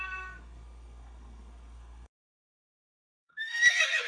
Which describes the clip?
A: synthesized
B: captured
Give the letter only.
A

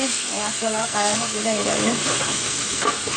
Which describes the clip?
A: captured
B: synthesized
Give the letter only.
B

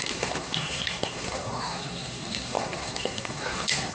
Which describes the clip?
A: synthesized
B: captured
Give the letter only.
A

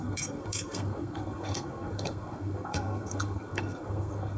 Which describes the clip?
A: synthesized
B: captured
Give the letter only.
A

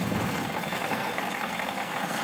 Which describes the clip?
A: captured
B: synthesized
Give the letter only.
B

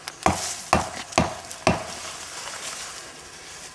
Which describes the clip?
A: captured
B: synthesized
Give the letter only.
A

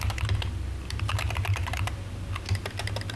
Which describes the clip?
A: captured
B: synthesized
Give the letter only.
A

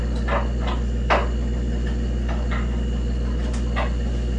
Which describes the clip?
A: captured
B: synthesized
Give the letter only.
A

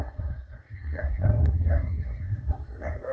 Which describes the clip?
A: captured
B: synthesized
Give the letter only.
B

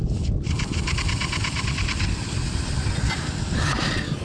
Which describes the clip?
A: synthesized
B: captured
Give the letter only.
B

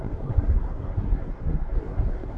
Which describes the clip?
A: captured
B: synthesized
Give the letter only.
B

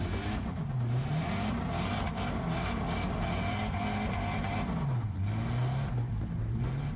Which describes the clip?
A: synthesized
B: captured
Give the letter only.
B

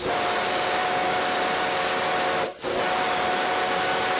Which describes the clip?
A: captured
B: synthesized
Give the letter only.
A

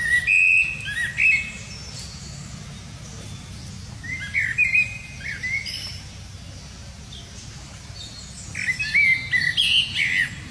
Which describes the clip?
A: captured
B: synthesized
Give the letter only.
A